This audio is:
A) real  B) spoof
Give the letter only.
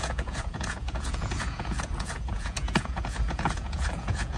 B